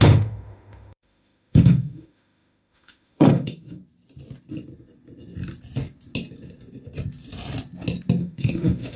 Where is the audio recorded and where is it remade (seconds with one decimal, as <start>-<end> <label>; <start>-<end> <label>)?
0.0-3.8 remade; 3.8-8.2 recorded; 8.2-9.0 remade